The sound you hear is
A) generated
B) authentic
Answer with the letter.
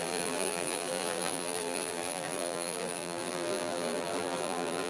A